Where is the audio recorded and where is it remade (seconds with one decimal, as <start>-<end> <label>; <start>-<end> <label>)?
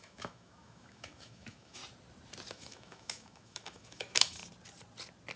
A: 0.0-1.8 remade; 1.8-2.5 recorded; 2.5-4.4 remade; 4.4-5.4 recorded